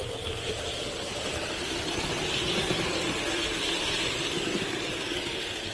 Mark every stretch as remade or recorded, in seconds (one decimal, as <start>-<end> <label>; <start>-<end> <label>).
0.0-5.7 recorded